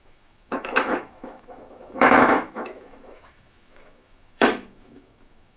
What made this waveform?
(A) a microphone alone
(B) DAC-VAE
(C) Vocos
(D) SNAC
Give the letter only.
B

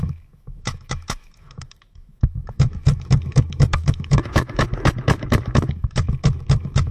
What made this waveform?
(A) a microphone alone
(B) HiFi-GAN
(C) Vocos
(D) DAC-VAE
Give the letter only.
D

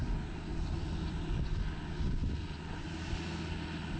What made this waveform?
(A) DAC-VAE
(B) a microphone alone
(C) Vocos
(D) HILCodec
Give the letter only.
B